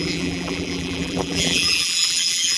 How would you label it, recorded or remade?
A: remade